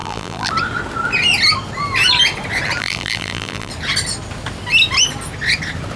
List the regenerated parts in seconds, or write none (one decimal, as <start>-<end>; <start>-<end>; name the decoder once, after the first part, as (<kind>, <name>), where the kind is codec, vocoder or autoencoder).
0.0-0.5 (vocoder, BigVGAN v2); 2.8-3.7